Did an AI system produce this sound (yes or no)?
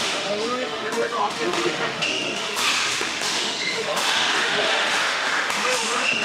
yes